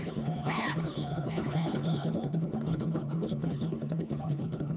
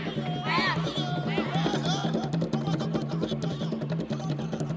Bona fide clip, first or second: second